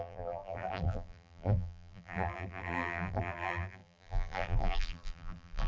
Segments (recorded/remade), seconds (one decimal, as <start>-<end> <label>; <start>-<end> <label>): 0.0-5.7 remade